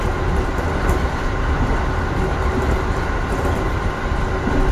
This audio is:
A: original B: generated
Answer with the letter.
A